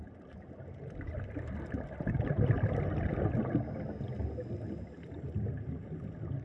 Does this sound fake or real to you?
real